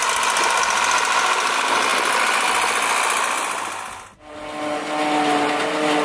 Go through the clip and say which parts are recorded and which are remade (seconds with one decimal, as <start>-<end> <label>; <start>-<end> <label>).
0.0-6.0 recorded